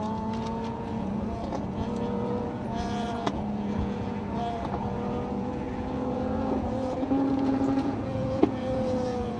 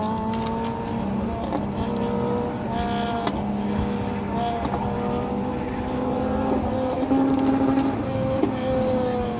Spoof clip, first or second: first